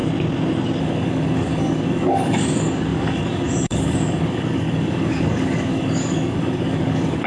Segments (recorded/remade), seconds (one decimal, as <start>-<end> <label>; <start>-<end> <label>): 0.0-0.8 recorded; 0.8-7.3 remade